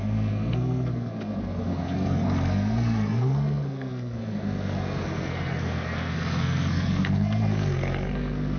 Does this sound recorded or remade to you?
remade